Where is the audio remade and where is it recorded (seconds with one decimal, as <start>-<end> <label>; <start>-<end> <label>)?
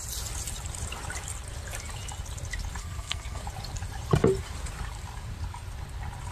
0.0-2.8 recorded; 2.8-3.4 remade; 3.4-6.3 recorded